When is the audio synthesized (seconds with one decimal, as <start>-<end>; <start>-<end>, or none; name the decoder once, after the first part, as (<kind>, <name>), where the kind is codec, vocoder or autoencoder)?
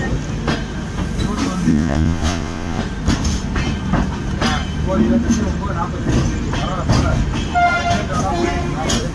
1.7-2.8 (vocoder, Vocos)